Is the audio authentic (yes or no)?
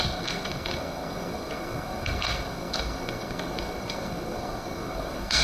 no